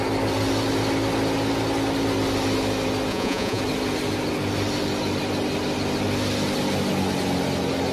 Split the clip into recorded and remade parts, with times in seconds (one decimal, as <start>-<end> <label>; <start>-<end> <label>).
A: 0.0-3.1 recorded; 3.1-3.6 remade; 3.6-7.9 recorded